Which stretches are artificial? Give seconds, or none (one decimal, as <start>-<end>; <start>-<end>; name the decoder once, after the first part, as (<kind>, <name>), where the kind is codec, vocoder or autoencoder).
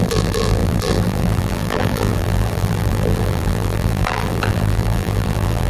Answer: 0.0-5.7 (vocoder, BigVGAN v2)